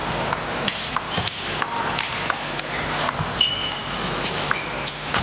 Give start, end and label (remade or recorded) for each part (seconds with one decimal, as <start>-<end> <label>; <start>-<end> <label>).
0.0-3.8 recorded; 3.8-4.7 remade; 4.7-5.2 recorded